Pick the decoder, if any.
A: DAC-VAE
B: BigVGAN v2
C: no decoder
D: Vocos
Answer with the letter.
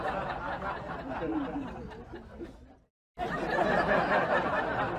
C